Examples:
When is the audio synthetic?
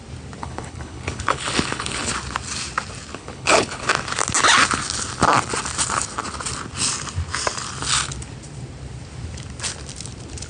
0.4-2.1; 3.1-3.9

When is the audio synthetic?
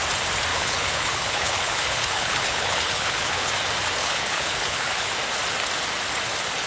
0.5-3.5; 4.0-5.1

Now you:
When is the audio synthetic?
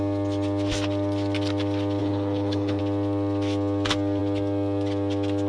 2.0-2.8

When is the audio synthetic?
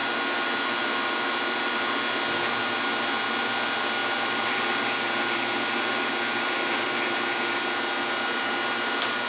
none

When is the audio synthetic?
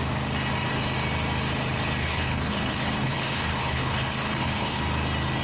2.0-4.8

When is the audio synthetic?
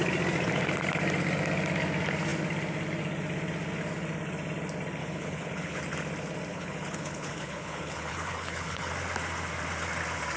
5.0-5.8; 6.5-8.9